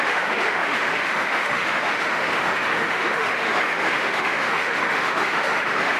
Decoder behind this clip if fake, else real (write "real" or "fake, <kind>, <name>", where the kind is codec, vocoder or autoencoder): fake, autoencoder, DAC-VAE